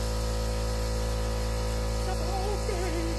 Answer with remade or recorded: recorded